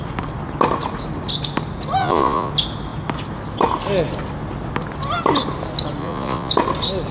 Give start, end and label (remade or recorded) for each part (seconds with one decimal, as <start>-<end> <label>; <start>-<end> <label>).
0.0-2.0 recorded; 2.0-2.5 remade; 2.5-6.0 recorded; 6.0-6.5 remade; 6.5-7.1 recorded